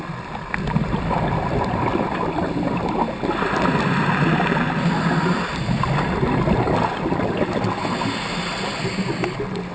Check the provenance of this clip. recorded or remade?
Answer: recorded